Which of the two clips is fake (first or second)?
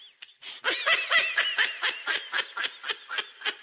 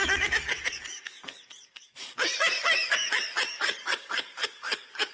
second